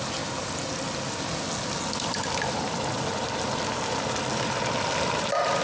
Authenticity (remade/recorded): recorded